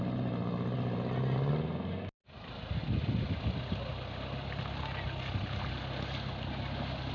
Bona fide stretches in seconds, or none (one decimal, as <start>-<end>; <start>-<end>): 0.0-7.1